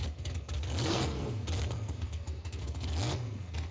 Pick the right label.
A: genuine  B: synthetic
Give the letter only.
B